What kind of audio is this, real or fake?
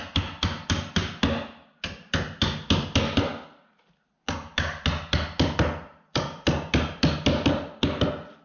real